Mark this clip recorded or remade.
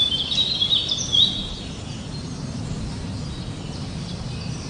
recorded